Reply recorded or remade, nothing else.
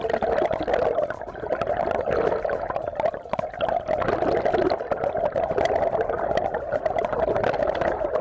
recorded